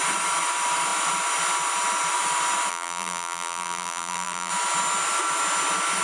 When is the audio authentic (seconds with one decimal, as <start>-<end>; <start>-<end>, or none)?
0.0-2.7; 4.5-6.0